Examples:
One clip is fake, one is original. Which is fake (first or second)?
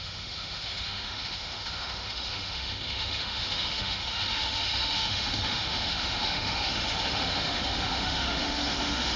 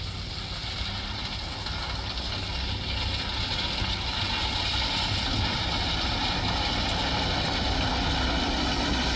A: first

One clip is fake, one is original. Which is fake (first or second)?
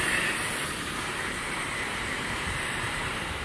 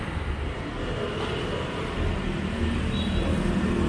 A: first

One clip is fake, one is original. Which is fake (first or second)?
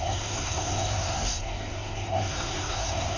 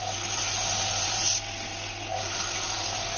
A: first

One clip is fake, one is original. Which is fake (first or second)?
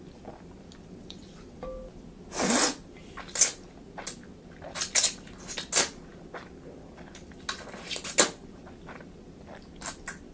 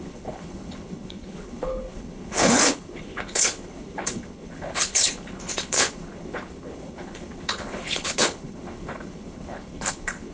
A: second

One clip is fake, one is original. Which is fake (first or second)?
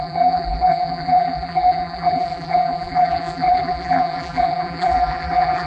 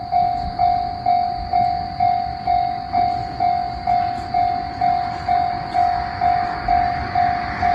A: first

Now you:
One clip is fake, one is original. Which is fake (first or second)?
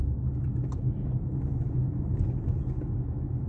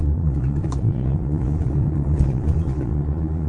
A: second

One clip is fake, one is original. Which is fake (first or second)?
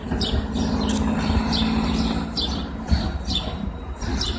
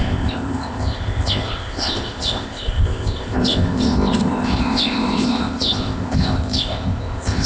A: second